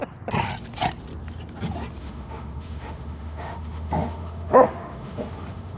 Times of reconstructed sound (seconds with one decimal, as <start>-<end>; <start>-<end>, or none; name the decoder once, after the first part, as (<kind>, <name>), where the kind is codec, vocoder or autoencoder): 2.0-5.8 (autoencoder, DAC-VAE)